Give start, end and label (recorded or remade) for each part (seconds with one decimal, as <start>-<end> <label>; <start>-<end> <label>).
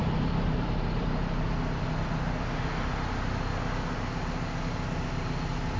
0.0-1.5 remade; 1.5-5.8 recorded